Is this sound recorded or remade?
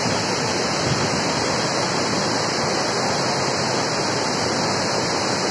recorded